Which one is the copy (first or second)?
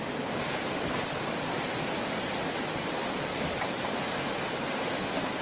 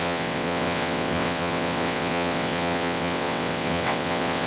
second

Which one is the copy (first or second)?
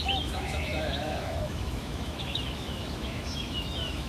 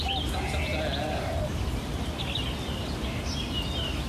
first